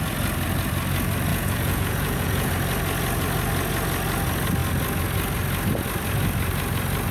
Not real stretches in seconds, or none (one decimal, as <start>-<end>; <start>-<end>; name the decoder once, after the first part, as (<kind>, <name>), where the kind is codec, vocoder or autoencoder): 1.3-2.5 (vocoder, Vocos)